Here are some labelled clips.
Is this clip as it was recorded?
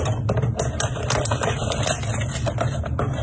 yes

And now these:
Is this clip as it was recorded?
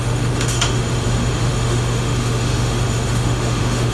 no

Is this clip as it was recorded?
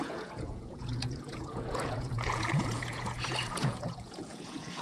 no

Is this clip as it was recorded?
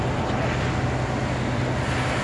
yes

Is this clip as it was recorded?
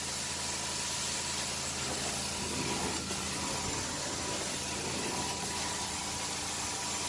yes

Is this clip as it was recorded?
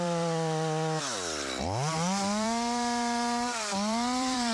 no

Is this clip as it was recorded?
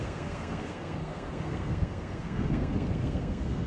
no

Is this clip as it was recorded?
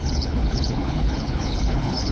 no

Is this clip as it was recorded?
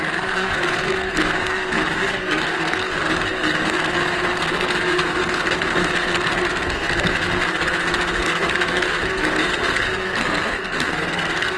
no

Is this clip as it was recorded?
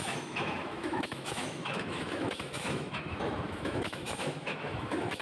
no